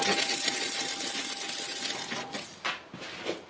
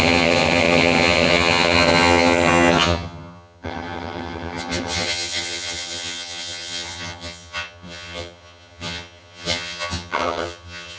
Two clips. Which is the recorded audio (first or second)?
first